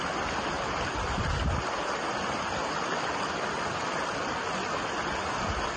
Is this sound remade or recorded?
recorded